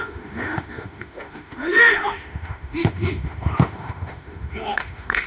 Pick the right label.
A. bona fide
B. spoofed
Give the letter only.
B